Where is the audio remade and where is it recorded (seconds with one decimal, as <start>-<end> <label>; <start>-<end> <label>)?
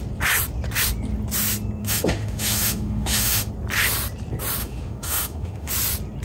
0.0-1.8 recorded; 1.8-3.5 remade; 3.5-4.6 recorded; 4.6-5.7 remade; 5.7-6.2 recorded